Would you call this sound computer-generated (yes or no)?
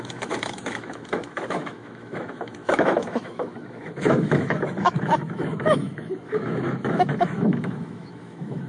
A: yes